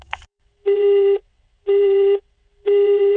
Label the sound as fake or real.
fake